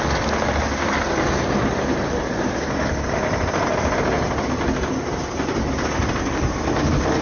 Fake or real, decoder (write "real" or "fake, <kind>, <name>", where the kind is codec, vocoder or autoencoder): real